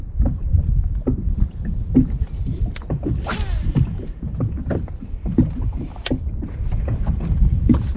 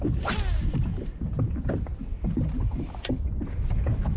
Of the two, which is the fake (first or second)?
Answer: first